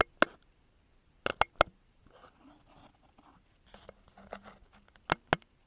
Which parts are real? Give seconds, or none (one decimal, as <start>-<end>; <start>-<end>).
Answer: 0.0-5.7